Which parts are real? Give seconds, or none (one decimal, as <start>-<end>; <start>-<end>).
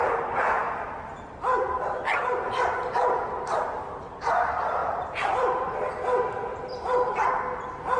0.0-0.6; 2.2-4.8; 5.9-6.5; 7.3-8.0